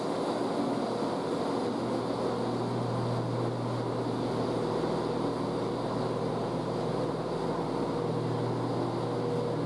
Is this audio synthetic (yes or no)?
no